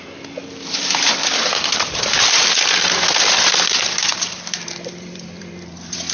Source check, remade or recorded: remade